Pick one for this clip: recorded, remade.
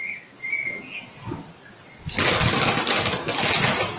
recorded